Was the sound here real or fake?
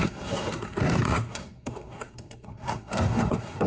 fake